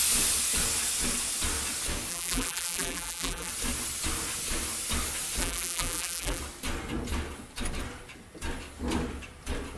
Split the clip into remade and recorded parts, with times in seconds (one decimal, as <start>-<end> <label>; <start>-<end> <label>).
0.0-2.1 recorded; 2.1-3.5 remade; 3.5-5.4 recorded; 5.4-6.4 remade; 6.4-9.8 recorded